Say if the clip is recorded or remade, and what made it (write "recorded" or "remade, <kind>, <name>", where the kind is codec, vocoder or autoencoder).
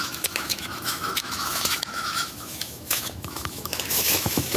remade, autoencoder, DAC-VAE